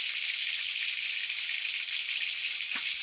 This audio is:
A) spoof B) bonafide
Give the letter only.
B